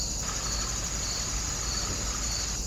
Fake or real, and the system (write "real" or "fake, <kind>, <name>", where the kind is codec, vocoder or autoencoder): real